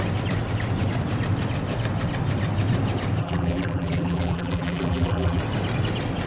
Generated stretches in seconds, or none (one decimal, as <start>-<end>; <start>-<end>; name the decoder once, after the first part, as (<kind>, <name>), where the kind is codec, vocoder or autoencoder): 3.2-5.4 (vocoder, BigVGAN v2)